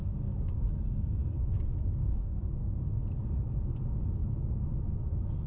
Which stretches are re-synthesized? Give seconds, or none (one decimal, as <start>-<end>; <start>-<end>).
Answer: 0.0-1.3; 2.0-3.0